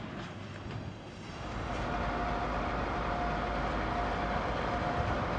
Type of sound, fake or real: real